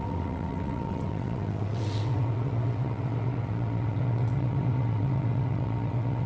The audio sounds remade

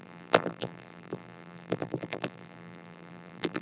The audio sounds remade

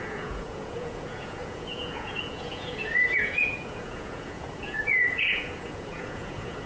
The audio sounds remade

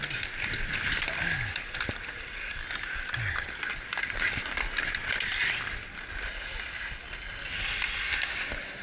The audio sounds recorded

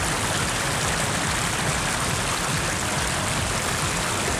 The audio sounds recorded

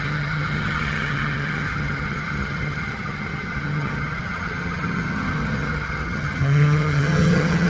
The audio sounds remade